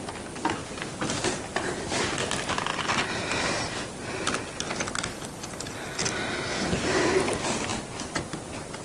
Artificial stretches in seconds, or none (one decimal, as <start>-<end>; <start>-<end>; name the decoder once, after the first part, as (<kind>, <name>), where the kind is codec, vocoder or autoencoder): 0.6-2.0 (vocoder, BigVGAN v2); 7.7-8.8